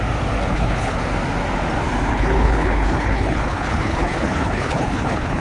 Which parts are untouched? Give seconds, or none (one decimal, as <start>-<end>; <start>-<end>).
0.0-0.5; 1.0-2.1